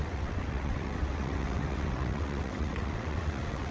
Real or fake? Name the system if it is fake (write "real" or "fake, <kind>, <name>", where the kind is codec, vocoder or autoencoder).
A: fake, vocoder, WaveNeXt